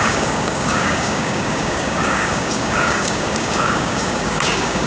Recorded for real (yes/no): no